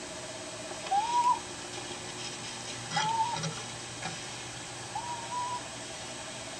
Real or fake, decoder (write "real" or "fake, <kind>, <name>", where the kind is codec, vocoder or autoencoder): real